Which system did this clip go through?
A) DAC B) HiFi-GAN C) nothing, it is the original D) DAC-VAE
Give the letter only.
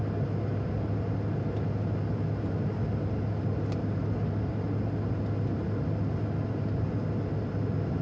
C